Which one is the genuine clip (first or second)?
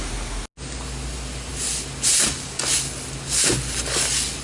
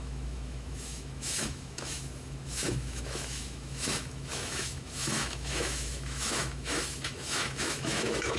first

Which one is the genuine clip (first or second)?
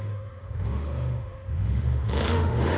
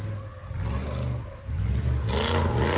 second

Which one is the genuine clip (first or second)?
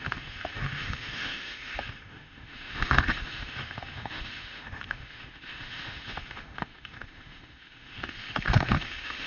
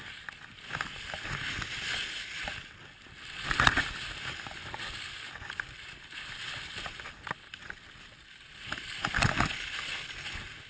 second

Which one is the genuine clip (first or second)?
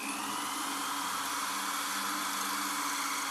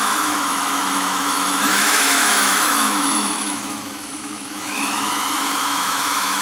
first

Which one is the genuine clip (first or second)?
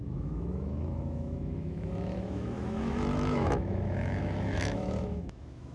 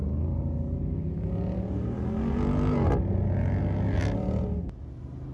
second